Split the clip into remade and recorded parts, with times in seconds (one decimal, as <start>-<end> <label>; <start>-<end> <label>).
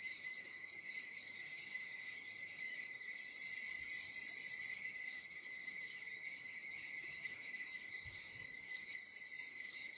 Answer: 0.0-3.2 remade; 3.2-4.7 recorded; 4.7-9.0 remade; 9.0-9.5 recorded; 9.5-10.0 remade